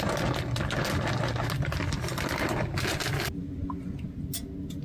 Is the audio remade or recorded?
recorded